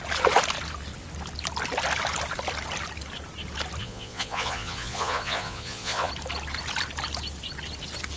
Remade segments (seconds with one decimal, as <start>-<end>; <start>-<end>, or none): 3.8-6.1